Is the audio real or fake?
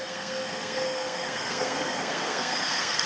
fake